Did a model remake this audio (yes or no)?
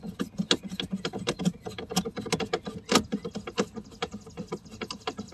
no